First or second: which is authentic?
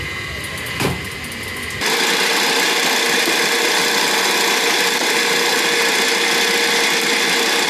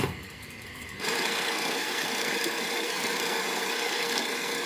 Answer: first